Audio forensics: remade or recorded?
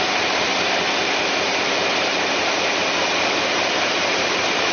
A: recorded